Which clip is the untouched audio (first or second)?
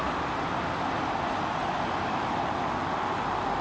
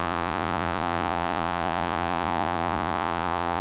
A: first